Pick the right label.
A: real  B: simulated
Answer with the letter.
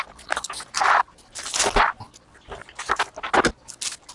A